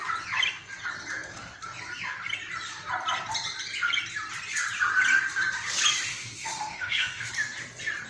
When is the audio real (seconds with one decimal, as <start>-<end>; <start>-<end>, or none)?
0.0-6.1; 7.3-8.1

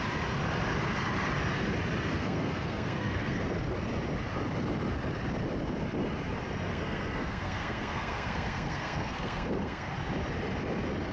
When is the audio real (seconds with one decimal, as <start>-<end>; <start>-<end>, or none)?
0.0-2.1; 3.4-6.7; 9.9-11.1